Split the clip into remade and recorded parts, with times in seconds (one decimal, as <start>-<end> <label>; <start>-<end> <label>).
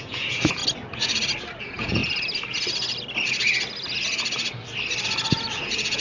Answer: 0.0-0.6 remade; 0.6-1.6 recorded; 1.6-2.0 remade; 2.0-5.6 recorded; 5.6-6.0 remade